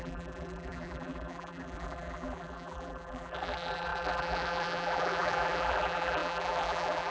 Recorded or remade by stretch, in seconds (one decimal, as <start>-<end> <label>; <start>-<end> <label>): 0.0-7.1 remade